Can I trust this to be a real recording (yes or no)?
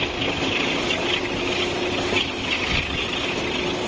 yes